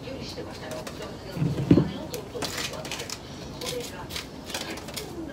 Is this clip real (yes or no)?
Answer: yes